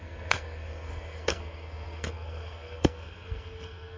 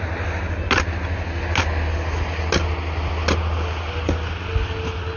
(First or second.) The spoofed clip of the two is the first